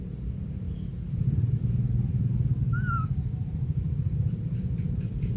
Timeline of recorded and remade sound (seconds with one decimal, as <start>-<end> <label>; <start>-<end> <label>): 0.0-2.5 remade; 2.5-3.5 recorded; 3.5-5.4 remade